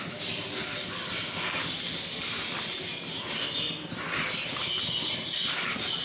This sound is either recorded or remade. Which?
recorded